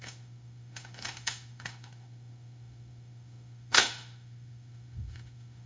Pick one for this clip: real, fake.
fake